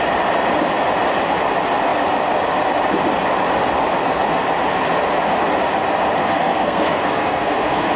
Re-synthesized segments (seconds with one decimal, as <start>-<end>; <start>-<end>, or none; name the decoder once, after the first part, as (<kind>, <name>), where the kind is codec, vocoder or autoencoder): 6.2-8.0 (codec, SNAC)

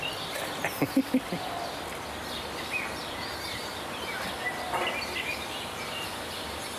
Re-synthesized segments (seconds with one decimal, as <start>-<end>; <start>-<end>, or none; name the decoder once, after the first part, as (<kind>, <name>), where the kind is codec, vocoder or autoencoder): none

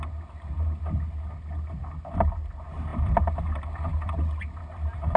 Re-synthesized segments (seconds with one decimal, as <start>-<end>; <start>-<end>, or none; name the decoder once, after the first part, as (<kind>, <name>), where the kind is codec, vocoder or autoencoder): none